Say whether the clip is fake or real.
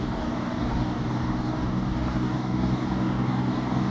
fake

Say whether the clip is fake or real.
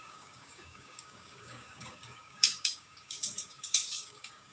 fake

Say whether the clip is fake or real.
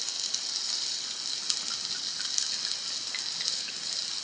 real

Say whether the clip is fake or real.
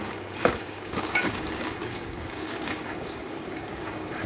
fake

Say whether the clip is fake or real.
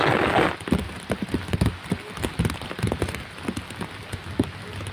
real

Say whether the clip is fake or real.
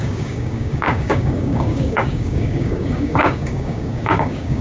fake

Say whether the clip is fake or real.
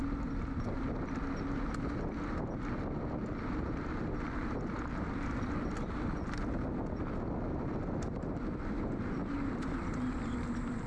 real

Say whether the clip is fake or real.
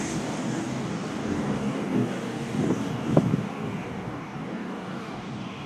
fake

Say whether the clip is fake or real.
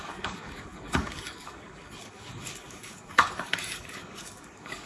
fake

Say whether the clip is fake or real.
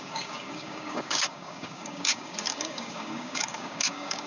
fake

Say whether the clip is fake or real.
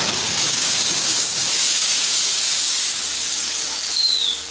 fake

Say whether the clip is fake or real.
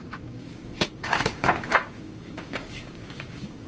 fake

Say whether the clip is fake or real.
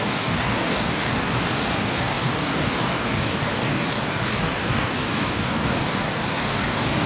fake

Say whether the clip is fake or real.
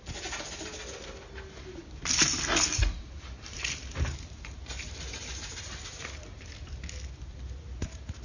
real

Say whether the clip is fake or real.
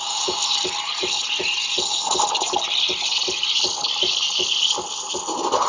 real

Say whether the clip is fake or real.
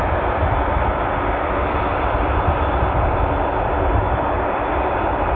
real